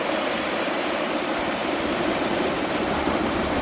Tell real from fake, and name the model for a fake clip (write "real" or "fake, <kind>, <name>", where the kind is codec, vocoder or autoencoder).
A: fake, vocoder, BigVGAN v2